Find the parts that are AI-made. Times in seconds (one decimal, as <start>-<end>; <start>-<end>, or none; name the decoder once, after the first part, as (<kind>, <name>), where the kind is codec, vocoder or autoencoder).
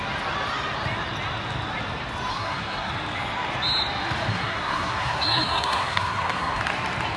2.3-2.9 (codec, SNAC); 4.3-6.6